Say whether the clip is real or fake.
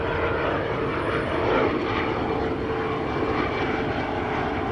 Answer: real